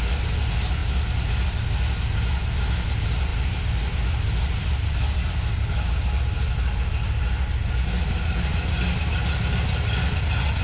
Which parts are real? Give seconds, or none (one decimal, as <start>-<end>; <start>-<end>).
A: 0.0-3.3; 7.8-10.6